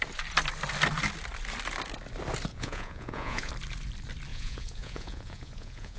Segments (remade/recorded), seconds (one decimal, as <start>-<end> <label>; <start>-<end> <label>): 0.0-2.5 recorded; 2.5-3.5 remade; 3.5-4.3 recorded; 4.3-6.0 remade